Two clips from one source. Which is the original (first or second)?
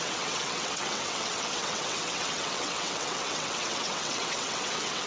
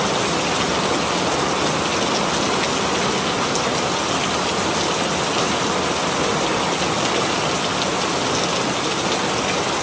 second